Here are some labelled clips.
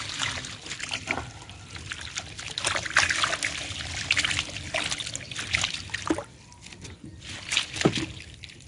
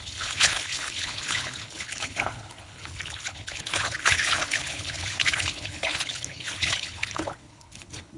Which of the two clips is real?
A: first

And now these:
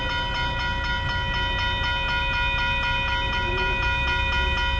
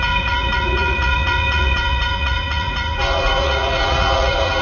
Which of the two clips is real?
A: first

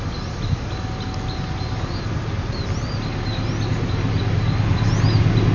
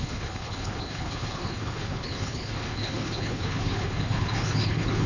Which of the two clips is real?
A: first